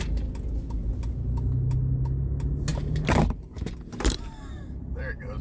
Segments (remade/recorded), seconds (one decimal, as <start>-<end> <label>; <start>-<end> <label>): 0.0-2.7 recorded; 2.7-5.4 remade